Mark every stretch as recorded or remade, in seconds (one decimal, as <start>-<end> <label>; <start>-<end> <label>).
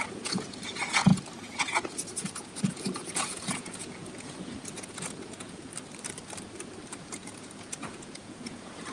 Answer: 0.0-5.7 remade; 5.7-7.0 recorded; 7.0-8.9 remade